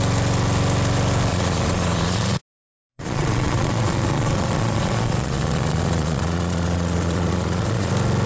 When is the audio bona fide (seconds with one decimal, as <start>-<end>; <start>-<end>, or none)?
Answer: 0.0-1.3; 2.4-2.9; 7.9-8.3